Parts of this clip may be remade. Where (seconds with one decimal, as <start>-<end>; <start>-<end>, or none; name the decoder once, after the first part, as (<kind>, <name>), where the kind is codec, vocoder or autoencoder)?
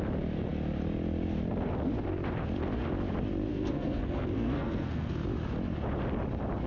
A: 3.5-5.1 (codec, SNAC)